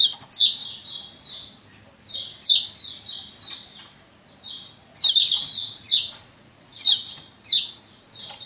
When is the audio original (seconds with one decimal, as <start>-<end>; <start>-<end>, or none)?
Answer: 0.6-5.4; 7.0-7.9